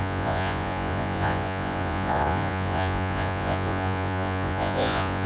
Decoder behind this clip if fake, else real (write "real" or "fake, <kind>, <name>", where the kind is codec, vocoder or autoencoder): fake, vocoder, Vocos